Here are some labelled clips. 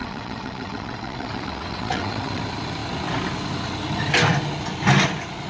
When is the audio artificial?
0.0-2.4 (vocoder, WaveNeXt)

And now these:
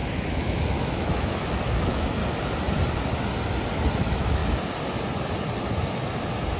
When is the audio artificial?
0.0-2.2 (autoencoder, DAC-VAE); 3.9-4.4

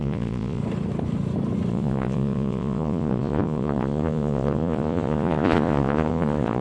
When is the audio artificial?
0.0-0.6 (vocoder, Vocos); 1.7-6.6

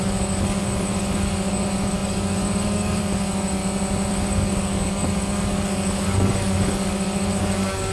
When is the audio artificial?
0.0-3.6 (codec, DAC); 4.1-7.9